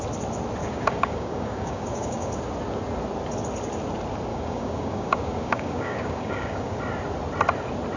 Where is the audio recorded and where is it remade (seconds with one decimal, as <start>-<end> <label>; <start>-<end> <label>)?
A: 0.0-0.6 recorded; 0.6-2.3 remade; 2.3-4.3 recorded; 4.3-6.8 remade; 6.8-8.0 recorded